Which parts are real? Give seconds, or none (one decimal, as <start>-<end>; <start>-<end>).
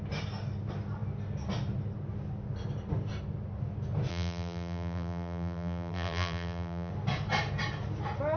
0.0-4.1; 6.9-8.4